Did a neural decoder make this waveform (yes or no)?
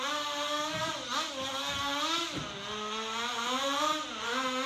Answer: no